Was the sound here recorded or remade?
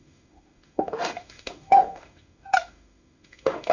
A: remade